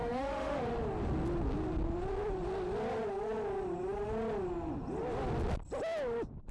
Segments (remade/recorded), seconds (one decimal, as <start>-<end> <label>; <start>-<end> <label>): 0.0-0.6 remade; 0.6-6.5 recorded